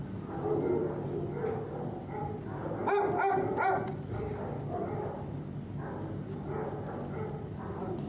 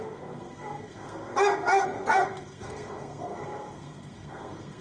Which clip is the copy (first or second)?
second